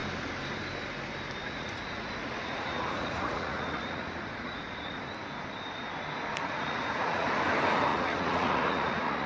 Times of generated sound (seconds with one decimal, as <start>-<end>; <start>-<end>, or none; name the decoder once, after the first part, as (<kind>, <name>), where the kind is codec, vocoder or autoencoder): 1.4-5.0 (vocoder, Vocos); 6.3-7.3; 7.9-9.3